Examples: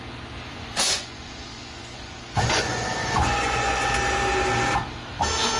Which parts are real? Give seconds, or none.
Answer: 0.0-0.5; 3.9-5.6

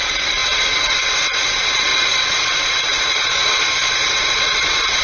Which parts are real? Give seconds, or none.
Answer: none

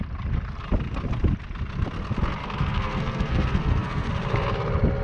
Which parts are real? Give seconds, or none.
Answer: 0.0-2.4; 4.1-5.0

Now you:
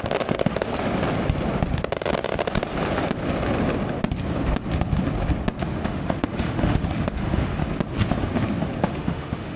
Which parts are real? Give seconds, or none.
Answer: 0.7-5.7; 7.6-8.8

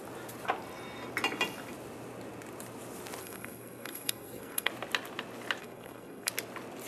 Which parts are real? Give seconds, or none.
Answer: 0.0-3.2; 4.7-5.6; 6.3-6.9

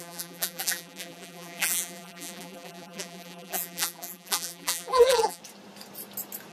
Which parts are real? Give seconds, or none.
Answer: 5.4-6.5